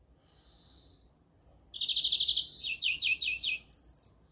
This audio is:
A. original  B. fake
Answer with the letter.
A